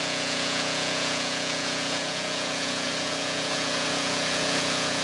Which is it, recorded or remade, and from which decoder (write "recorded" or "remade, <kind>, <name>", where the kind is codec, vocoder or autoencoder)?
remade, vocoder, Vocos